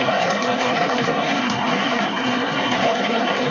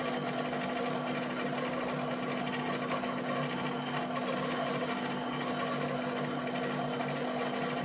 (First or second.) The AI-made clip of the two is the first